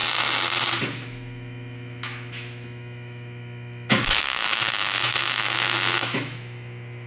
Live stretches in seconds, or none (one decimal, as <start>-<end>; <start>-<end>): 0.0-0.8

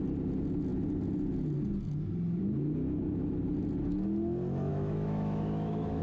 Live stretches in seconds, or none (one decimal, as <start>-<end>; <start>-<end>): 0.0-4.7

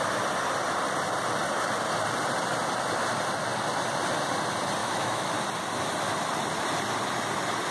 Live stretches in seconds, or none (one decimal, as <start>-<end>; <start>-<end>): 0.0-4.8; 5.3-7.7

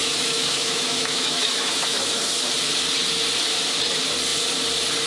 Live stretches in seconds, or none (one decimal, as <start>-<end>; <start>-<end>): 2.2-5.1

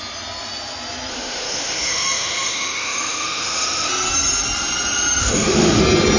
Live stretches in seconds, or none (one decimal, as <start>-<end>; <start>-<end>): 0.0-1.1; 3.9-5.2; 5.8-6.2

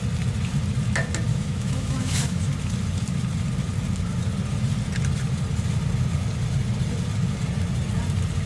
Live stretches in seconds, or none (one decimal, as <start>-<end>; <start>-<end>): 0.0-1.3; 2.4-8.5

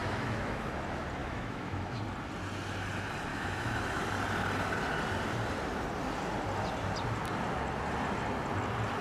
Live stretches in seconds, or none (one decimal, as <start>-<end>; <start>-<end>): 0.7-1.2; 2.0-3.3; 4.0-9.0